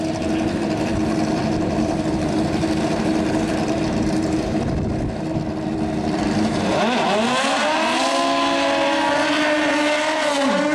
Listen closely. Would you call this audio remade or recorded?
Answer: recorded